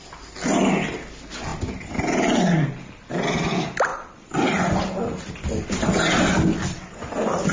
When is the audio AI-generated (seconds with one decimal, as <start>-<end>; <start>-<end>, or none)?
3.9-5.3